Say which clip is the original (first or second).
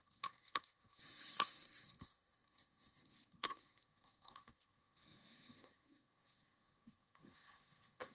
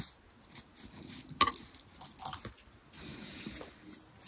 second